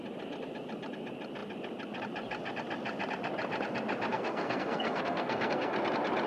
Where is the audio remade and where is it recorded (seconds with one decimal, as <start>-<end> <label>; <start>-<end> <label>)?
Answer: 0.0-4.1 recorded; 4.1-5.7 remade; 5.7-6.3 recorded

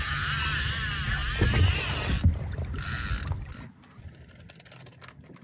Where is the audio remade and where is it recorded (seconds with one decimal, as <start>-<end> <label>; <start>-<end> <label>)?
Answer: 0.0-5.4 recorded

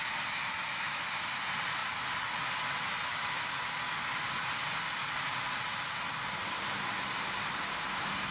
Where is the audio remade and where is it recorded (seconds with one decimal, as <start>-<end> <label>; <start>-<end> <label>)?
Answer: 0.0-8.3 recorded

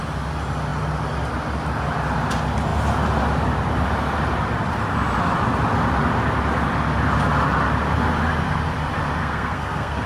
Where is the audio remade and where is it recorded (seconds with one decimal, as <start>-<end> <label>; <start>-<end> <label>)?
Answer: 0.0-9.2 recorded; 9.2-10.1 remade